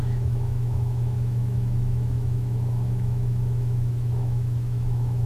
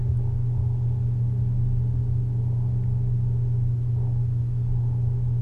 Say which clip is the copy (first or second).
first